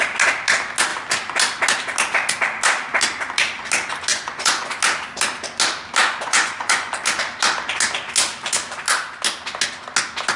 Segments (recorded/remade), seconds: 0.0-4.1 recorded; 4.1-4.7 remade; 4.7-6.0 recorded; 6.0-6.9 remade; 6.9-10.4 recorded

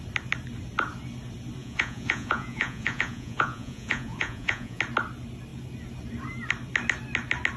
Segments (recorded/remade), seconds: 0.0-1.6 recorded; 1.6-4.8 remade; 4.8-7.6 recorded